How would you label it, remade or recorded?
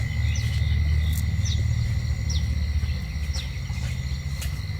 recorded